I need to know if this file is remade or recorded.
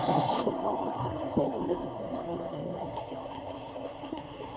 remade